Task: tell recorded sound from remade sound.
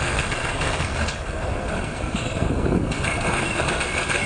remade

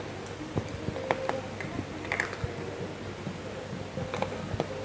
recorded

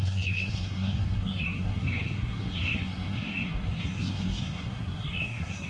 remade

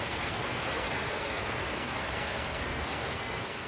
remade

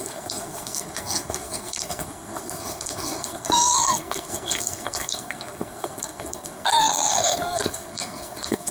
remade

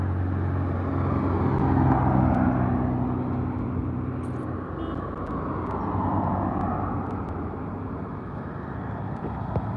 recorded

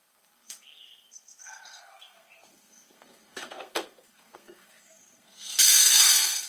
remade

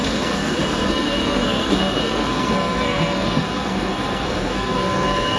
remade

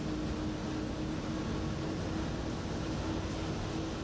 recorded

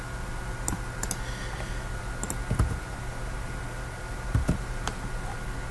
recorded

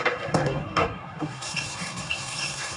remade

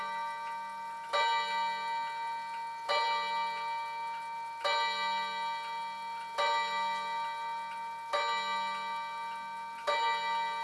recorded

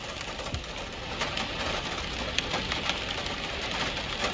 recorded